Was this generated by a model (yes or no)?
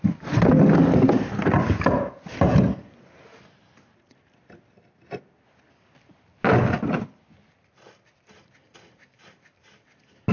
no